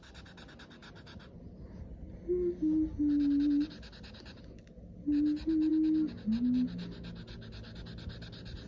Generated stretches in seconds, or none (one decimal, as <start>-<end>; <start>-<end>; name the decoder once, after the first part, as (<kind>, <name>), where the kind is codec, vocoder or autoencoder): none